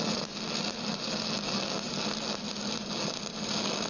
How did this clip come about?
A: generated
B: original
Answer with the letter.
B